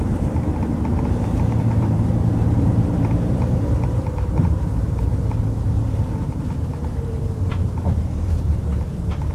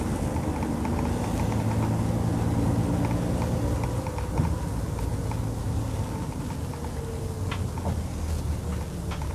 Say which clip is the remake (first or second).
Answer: first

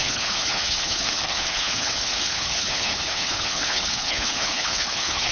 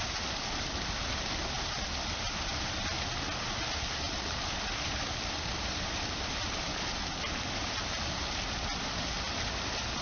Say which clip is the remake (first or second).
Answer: first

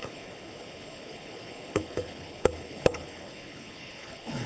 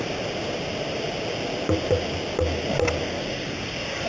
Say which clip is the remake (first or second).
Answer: first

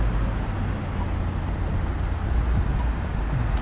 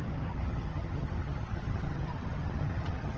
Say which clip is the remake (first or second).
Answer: second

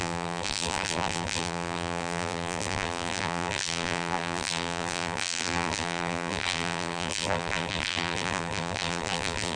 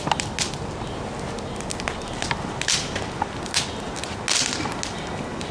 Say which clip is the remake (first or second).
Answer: first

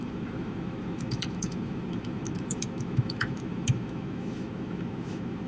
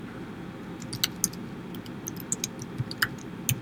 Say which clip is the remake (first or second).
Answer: first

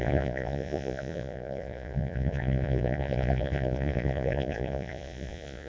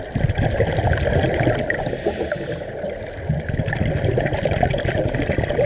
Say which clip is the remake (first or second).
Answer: first